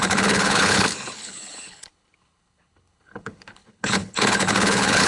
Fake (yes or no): yes